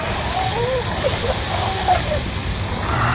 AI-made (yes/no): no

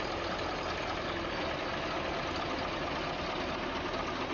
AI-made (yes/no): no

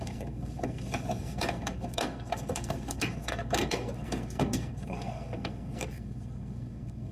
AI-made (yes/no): yes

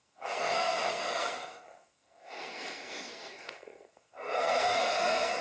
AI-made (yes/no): yes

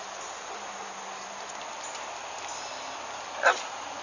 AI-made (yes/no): no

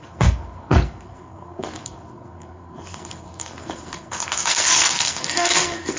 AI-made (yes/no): yes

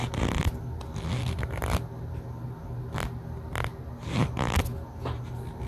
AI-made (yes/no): no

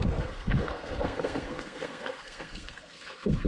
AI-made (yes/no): yes